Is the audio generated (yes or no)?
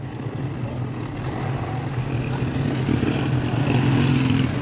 no